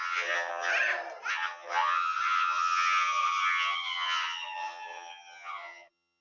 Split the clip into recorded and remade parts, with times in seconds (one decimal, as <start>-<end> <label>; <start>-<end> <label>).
0.0-0.7 remade; 0.7-1.3 recorded; 1.3-6.2 remade